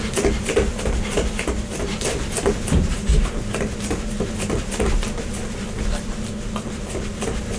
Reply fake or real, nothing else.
real